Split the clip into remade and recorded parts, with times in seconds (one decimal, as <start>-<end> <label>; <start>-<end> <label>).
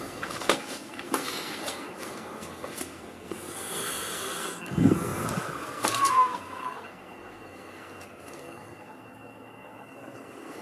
0.0-10.6 remade